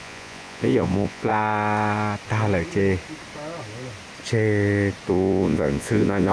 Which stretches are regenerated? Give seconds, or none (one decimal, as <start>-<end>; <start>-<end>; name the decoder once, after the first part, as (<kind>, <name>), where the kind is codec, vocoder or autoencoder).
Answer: 0.0-1.3 (vocoder, Vocos); 5.1-6.3